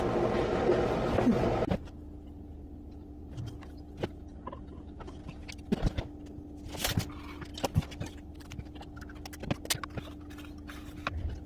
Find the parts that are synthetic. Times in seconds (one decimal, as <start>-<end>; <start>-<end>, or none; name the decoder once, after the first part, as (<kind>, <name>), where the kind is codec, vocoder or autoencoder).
none